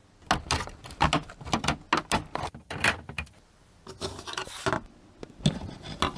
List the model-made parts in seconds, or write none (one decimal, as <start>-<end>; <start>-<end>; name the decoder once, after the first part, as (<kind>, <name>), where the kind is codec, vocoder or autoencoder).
none

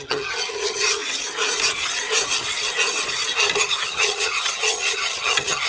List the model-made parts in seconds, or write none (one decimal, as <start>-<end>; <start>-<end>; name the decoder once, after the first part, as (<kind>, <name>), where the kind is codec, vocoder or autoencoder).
0.0-1.0 (vocoder, HiFi-GAN); 3.6-5.7

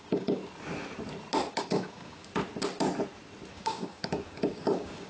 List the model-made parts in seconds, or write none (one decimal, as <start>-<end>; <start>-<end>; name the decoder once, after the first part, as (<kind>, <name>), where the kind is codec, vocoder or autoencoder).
0.0-0.4 (codec, DAC); 1.5-2.3; 3.5-5.1

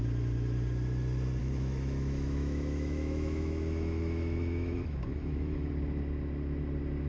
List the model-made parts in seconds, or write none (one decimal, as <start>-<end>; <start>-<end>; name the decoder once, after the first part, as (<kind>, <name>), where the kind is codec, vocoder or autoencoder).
1.4-5.7 (autoencoder, DAC-VAE)

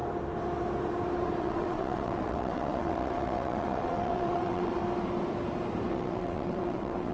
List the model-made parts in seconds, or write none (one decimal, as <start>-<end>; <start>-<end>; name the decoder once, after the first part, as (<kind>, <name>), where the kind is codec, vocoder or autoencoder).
1.4-4.8 (vocoder, WaveNeXt); 5.9-7.1

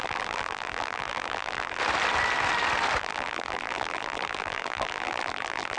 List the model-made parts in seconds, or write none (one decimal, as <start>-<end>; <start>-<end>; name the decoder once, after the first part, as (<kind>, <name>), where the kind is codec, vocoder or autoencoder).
0.0-1.8 (vocoder, BigVGAN v2); 3.0-5.8

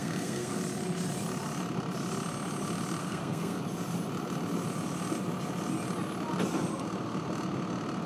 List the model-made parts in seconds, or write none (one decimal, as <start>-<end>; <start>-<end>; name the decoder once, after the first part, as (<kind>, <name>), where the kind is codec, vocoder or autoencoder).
0.0-0.6 (codec, SNAC); 3.0-3.6

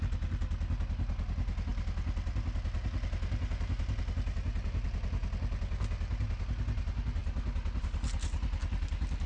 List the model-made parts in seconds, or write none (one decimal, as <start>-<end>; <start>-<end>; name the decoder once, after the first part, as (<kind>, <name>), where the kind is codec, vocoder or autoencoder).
none